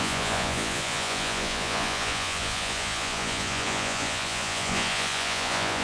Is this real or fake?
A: fake